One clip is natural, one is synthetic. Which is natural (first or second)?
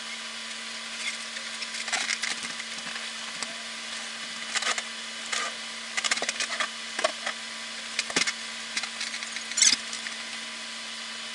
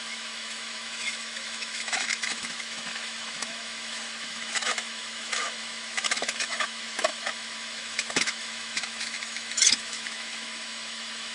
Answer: first